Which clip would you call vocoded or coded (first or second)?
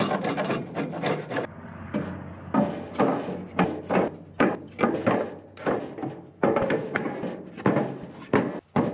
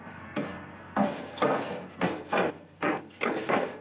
second